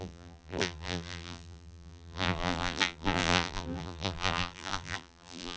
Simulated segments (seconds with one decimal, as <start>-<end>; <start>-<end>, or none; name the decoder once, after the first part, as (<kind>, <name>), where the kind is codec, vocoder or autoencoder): 0.0-5.6 (vocoder, BigVGAN v2)